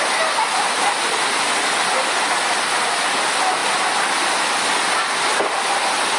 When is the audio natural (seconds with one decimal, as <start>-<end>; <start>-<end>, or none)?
0.0-6.2